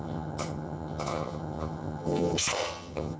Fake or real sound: fake